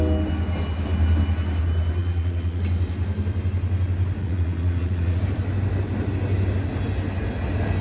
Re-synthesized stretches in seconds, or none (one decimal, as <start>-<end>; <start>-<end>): 2.0-2.6; 4.2-5.2